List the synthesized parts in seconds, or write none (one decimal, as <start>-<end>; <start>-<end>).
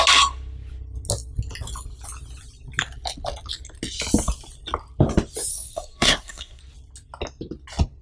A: 5.5-6.6